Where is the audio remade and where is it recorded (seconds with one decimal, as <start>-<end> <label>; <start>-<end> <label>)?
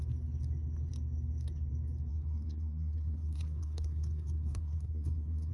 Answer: 0.0-2.1 recorded; 2.1-5.5 remade